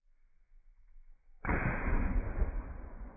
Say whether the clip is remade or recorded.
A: remade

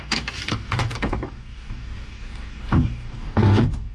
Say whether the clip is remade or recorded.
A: remade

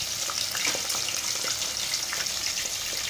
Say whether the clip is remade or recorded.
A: recorded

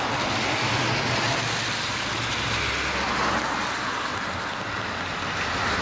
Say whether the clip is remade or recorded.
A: recorded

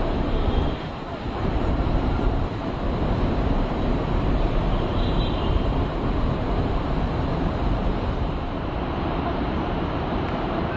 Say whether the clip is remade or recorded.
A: remade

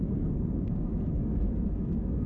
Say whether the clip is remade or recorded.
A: remade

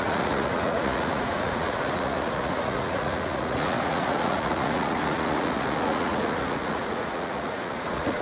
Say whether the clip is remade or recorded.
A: remade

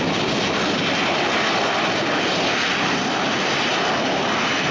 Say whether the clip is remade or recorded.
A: recorded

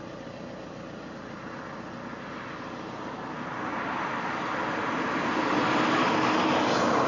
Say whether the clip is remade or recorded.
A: recorded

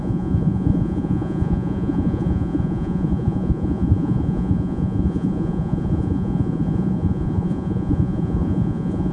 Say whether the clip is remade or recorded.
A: remade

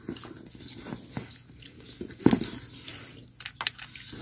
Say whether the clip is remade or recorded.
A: recorded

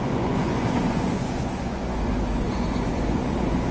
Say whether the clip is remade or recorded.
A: remade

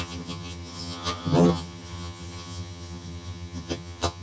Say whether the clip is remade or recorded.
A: remade